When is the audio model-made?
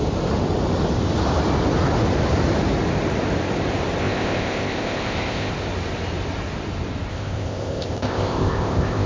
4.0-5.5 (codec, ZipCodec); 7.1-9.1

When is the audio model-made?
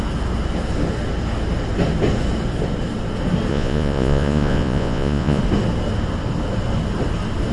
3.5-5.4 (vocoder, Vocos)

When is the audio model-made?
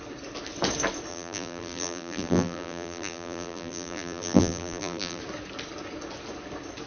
1.1-5.2 (vocoder, BigVGAN v2)